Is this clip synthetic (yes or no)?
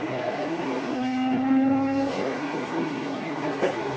yes